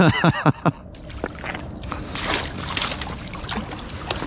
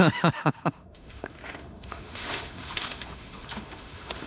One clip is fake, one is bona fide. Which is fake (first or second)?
second